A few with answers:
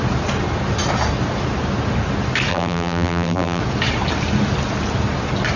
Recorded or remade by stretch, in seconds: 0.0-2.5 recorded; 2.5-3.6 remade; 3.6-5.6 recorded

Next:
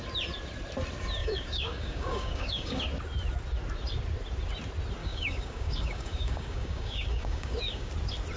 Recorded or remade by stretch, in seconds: 0.0-1.2 recorded; 1.2-2.8 remade; 2.8-5.0 recorded; 5.0-7.9 remade; 7.9-8.4 recorded

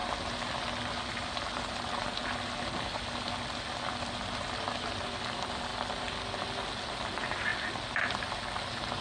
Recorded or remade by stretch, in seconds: 0.0-5.7 recorded; 5.7-6.4 remade; 6.4-7.5 recorded; 7.5-8.3 remade; 8.3-9.0 recorded

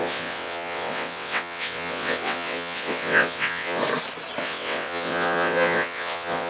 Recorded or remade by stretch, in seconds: 0.0-3.8 remade; 3.8-4.4 recorded; 4.4-6.5 remade

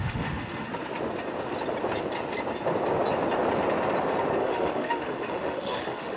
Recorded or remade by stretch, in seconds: 0.0-0.7 remade; 0.7-4.4 recorded; 4.4-6.2 remade

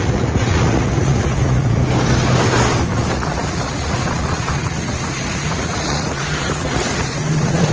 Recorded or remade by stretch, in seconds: 0.0-1.8 remade; 1.8-2.9 recorded; 2.9-7.7 remade

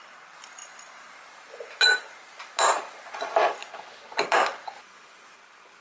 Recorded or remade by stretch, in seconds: 0.0-5.8 recorded